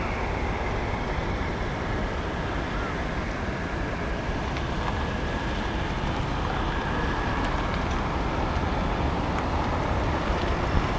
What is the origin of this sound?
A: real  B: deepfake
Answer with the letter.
A